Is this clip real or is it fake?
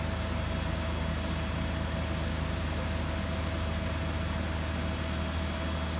real